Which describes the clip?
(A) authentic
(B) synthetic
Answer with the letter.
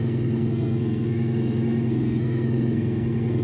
B